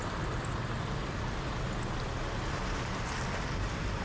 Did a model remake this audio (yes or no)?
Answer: no